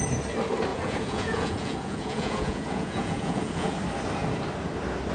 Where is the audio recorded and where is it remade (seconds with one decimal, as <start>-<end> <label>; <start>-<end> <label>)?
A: 0.0-0.7 recorded; 0.7-3.7 remade; 3.7-5.1 recorded